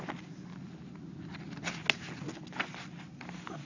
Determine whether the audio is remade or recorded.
recorded